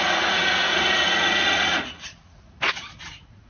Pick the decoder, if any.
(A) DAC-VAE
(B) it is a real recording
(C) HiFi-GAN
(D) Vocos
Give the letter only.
D